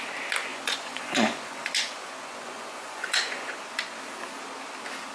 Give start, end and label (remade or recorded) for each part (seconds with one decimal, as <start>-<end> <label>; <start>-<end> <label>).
0.0-0.5 recorded; 0.5-3.5 remade; 3.5-5.1 recorded